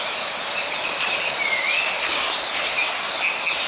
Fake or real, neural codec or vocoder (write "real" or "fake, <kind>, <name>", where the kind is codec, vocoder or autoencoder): real